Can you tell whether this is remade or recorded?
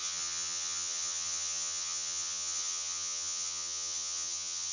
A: remade